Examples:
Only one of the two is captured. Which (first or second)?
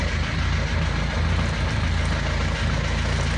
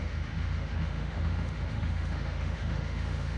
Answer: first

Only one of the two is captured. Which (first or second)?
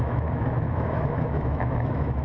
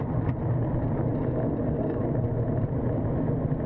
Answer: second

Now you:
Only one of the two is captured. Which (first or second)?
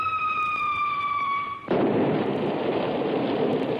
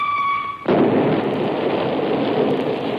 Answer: second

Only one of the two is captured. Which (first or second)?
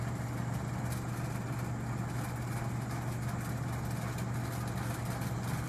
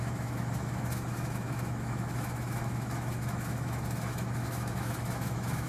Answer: first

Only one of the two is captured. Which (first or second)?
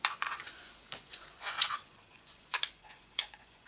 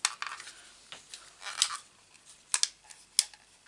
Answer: second